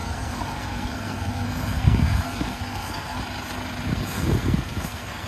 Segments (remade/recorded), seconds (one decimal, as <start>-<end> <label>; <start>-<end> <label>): 0.0-3.2 remade; 3.2-3.9 recorded; 3.9-5.3 remade